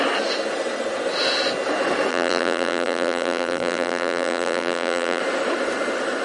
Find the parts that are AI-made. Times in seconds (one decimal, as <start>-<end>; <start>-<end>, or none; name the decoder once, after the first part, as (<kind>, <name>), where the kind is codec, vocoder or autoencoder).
2.1-5.2 (vocoder, BigVGAN v2)

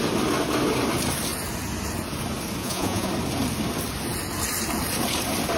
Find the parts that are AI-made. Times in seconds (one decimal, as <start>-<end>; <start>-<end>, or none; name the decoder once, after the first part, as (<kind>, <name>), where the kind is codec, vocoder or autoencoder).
2.6-3.1 (vocoder, Vocos)

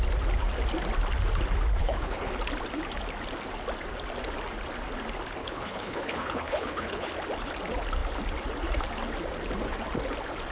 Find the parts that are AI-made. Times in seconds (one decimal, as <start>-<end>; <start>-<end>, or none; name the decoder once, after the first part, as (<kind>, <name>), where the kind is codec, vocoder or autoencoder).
1.8-2.3 (codec, HILCodec); 5.4-7.1

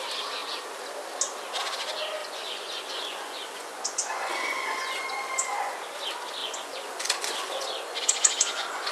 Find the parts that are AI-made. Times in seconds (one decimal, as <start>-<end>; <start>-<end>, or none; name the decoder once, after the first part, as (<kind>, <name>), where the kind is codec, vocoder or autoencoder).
2.2-5.8 (vocoder, Vocos); 6.4-8.9

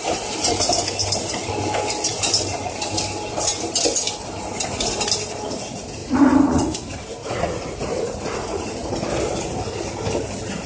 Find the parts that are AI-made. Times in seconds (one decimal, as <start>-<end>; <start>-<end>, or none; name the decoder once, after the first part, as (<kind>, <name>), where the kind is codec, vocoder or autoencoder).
6.0-6.8 (vocoder, Vocos); 7.2-8.7

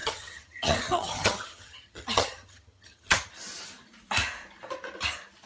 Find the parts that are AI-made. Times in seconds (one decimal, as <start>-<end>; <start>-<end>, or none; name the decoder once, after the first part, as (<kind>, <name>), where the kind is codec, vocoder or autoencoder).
0.0-3.3 (vocoder, HiFi-GAN)

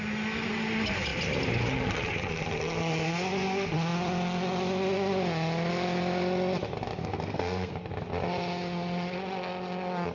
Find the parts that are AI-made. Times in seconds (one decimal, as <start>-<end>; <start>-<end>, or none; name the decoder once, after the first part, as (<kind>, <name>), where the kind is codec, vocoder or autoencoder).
7.0-7.7 (codec, SNAC)

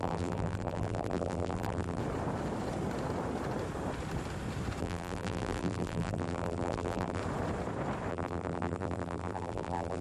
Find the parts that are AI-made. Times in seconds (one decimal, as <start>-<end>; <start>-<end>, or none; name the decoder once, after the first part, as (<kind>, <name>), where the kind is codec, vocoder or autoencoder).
0.0-2.0 (vocoder, BigVGAN v2); 4.8-7.2; 8.1-10.0